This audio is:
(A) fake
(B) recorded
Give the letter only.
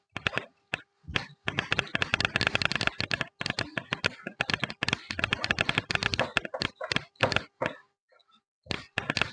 B